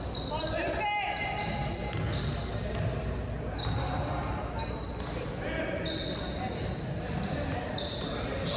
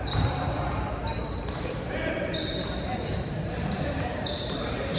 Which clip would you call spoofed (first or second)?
second